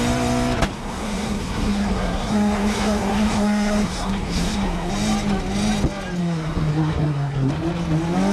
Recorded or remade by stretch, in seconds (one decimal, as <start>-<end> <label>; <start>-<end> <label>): 0.0-0.7 recorded; 0.7-4.9 remade; 4.9-6.2 recorded; 6.2-7.5 remade; 7.5-8.3 recorded